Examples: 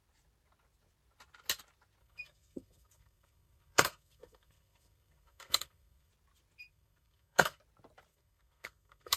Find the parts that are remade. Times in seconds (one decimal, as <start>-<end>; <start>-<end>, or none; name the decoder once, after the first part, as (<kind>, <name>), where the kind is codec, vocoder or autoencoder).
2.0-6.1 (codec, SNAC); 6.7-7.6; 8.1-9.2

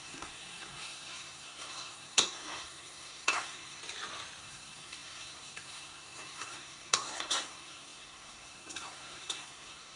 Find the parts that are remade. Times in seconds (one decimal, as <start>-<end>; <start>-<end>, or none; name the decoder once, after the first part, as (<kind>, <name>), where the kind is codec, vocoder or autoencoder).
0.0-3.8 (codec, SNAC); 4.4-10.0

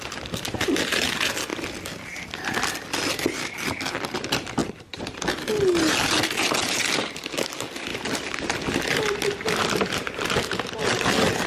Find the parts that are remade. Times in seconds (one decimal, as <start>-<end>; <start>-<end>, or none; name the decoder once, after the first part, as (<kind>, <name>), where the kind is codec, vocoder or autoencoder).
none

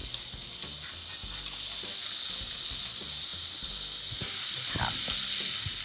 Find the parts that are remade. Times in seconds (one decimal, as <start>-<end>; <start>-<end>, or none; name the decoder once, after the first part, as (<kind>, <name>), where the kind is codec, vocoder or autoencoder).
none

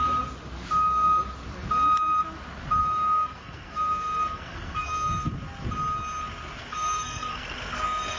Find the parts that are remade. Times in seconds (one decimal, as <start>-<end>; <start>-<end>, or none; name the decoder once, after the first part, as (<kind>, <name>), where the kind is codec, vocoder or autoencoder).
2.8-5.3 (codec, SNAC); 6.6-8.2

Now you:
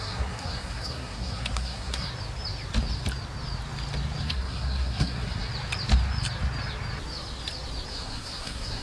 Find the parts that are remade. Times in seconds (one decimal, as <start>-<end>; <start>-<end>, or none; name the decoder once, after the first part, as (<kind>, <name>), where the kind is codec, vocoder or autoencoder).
0.0-2.1 (codec, SNAC); 4.2-5.5; 7.9-8.8

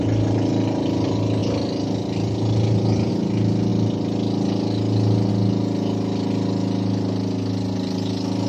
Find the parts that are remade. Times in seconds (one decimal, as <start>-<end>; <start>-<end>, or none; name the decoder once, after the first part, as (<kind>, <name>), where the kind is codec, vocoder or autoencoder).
none